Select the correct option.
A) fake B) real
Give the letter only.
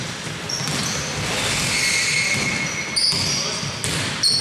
B